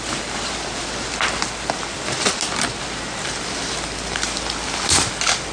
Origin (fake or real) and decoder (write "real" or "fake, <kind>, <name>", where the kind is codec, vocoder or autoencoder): real